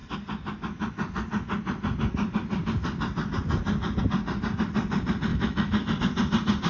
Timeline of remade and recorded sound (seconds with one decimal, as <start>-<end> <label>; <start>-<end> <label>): 0.0-5.3 recorded; 5.3-6.0 remade; 6.0-6.7 recorded